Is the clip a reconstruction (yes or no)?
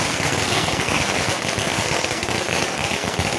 yes